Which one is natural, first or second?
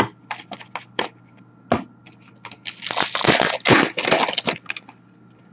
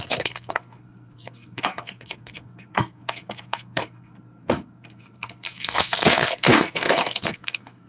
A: first